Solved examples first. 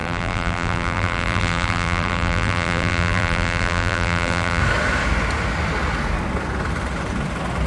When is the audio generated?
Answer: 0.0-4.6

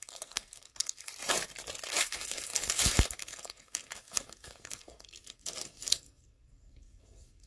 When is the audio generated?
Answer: 0.0-1.1; 1.9-7.5

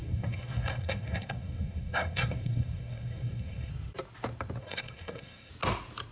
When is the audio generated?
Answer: 0.0-3.7; 4.6-5.5

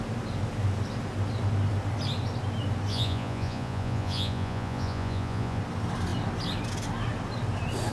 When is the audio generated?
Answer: 2.9-5.6

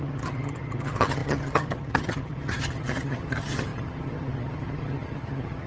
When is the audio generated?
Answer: 0.0-5.7

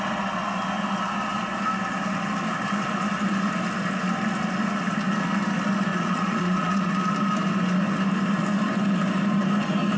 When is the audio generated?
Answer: 5.9-6.9

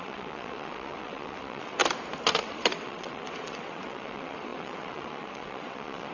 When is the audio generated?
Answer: 0.0-1.8; 2.4-6.1

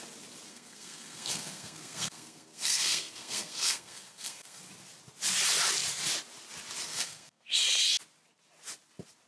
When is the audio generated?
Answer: 0.5-4.6; 6.9-7.6